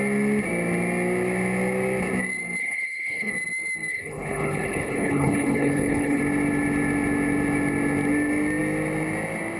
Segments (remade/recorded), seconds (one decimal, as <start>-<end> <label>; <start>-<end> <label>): 0.0-2.6 recorded; 2.6-3.3 remade; 3.3-3.9 recorded; 3.9-6.2 remade; 6.2-9.6 recorded